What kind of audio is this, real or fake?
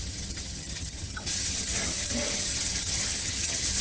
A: fake